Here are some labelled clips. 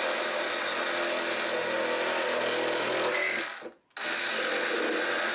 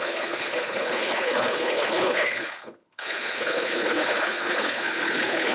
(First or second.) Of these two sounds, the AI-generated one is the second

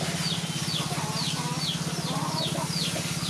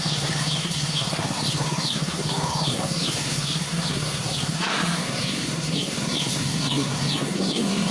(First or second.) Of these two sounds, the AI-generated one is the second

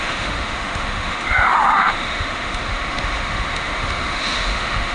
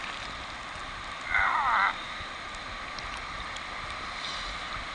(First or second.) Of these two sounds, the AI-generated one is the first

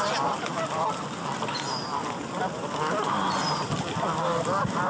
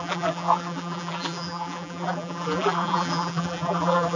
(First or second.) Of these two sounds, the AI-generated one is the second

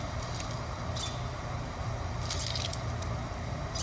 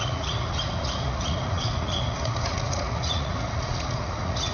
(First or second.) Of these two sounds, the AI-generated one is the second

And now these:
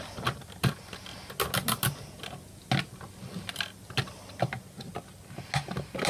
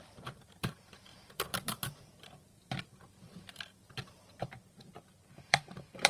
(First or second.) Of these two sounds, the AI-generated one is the second